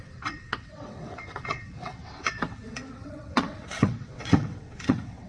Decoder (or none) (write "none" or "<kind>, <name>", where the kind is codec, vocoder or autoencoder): vocoder, WaveNeXt